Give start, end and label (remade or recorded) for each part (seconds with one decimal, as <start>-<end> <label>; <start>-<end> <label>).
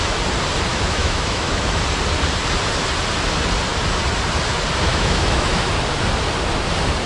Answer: 0.0-0.7 recorded; 0.7-1.8 remade; 1.8-4.9 recorded; 4.9-5.7 remade; 5.7-7.1 recorded